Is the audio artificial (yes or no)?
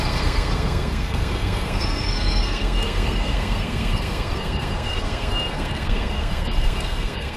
yes